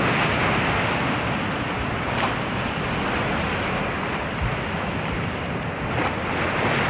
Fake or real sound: real